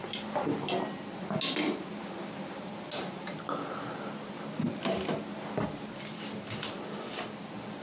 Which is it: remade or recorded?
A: recorded